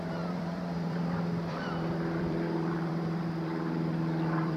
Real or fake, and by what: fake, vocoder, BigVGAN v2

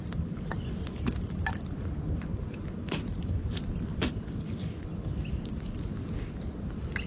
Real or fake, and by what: real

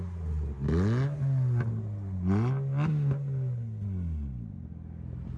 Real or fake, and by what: real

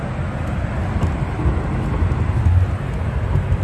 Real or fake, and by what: real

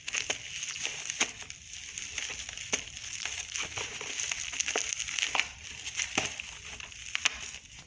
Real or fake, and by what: real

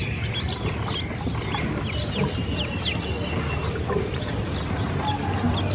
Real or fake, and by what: real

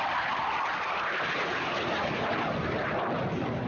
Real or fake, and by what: real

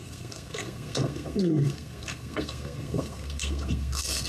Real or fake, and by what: fake, codec, SNAC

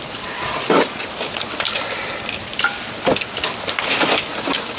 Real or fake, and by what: real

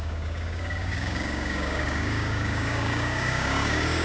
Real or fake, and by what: fake, codec, DAC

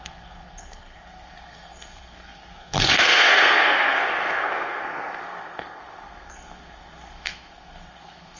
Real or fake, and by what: fake, codec, SNAC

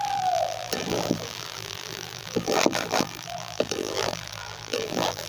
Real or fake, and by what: fake, vocoder, BigVGAN v2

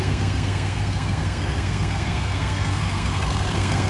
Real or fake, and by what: fake, codec, SNAC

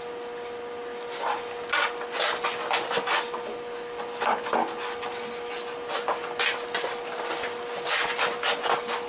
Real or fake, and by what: real